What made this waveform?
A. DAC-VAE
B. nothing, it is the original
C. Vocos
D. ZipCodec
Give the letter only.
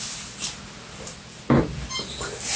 B